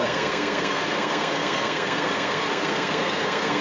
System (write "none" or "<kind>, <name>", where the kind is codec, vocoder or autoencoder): codec, SNAC